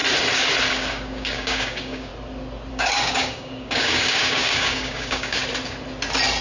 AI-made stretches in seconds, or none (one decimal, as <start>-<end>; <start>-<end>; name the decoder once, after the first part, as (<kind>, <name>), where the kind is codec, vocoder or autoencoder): 0.7-2.1 (codec, DAC); 2.7-5.4